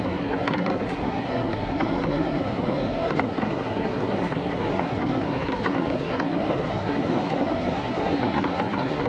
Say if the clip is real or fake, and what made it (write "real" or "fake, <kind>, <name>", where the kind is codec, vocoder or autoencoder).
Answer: fake, codec, SNAC